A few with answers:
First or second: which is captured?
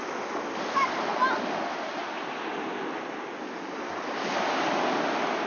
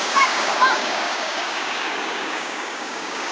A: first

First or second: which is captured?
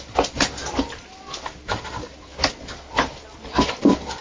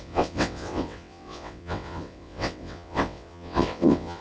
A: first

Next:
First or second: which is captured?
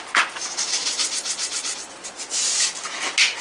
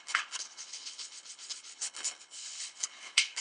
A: first